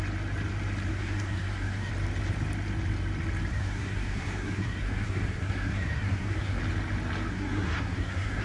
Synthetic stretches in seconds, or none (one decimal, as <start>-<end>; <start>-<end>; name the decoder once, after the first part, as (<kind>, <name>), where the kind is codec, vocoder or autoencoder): 0.9-1.9 (codec, SNAC); 3.5-6.6; 7.3-8.4